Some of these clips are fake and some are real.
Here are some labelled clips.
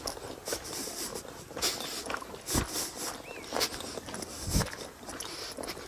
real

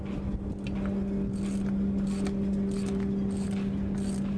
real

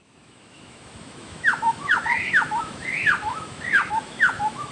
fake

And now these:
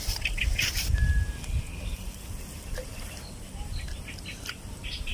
real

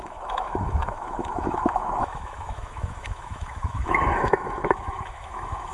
fake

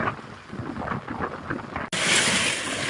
real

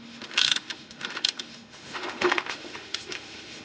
fake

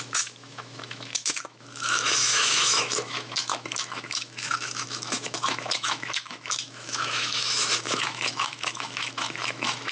fake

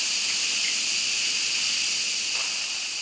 real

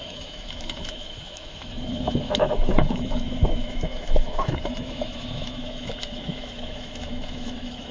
fake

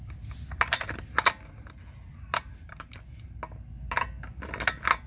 real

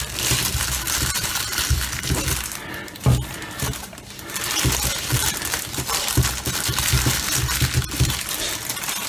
real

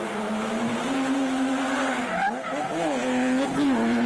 real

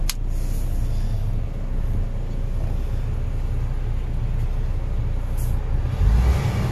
real